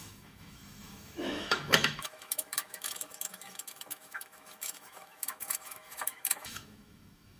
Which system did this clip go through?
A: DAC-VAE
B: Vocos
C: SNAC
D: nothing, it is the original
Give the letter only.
A